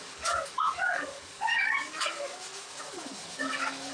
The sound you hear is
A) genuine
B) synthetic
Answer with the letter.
B